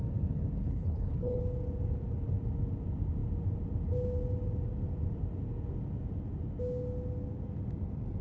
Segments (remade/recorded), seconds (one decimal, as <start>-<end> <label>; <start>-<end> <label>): 0.0-0.6 recorded; 0.6-1.4 remade; 1.4-8.2 recorded